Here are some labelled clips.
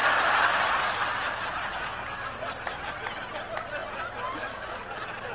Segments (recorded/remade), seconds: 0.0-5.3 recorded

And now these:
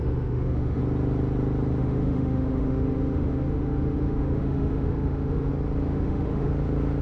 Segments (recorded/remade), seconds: 0.0-0.8 remade; 0.8-1.8 recorded; 1.8-5.5 remade; 5.5-5.9 recorded; 5.9-6.5 remade; 6.5-7.0 recorded

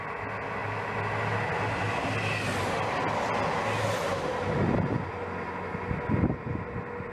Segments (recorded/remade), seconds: 0.0-7.1 recorded

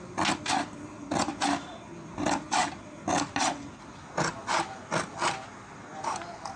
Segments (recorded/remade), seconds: 0.0-6.6 recorded